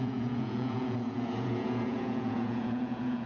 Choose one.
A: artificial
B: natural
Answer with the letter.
A